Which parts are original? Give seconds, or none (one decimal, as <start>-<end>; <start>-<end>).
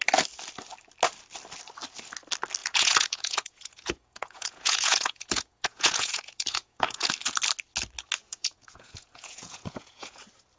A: 0.0-2.6; 7.1-8.2; 10.2-10.6